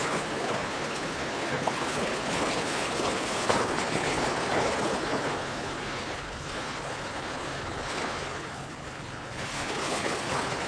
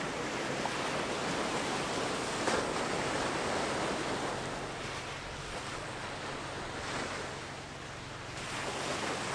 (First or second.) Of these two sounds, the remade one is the first